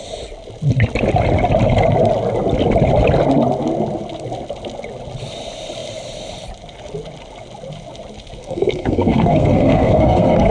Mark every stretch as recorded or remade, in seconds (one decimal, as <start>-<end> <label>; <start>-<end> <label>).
0.0-8.4 recorded; 8.4-10.5 remade